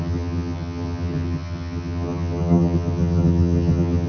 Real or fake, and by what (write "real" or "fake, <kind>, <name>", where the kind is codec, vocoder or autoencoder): fake, vocoder, HiFi-GAN